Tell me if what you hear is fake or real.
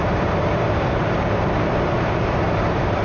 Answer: fake